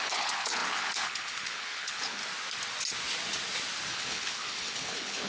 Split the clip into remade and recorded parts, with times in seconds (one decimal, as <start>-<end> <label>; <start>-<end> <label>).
0.0-2.2 remade; 2.2-3.9 recorded; 3.9-5.3 remade